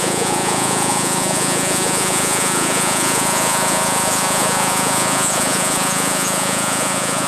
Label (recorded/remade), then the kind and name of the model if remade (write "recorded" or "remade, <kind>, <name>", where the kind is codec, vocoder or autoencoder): remade, vocoder, Vocos